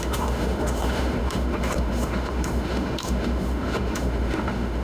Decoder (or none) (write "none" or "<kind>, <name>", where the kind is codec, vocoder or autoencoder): autoencoder, DAC-VAE